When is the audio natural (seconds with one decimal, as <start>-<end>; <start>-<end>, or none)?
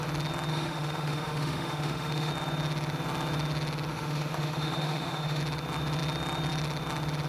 0.0-0.5; 2.3-3.9; 5.4-7.3